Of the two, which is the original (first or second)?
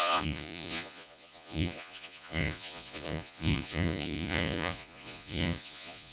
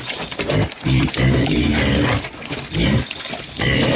second